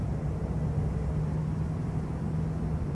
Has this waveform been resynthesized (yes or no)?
no